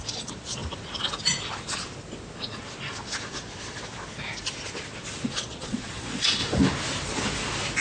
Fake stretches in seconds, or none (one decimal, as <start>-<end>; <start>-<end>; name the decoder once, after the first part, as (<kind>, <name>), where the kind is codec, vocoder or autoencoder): 0.0-0.6 (vocoder, Vocos); 5.3-6.4